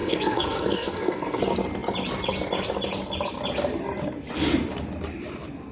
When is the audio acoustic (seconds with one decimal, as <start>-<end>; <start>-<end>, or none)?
1.4-5.7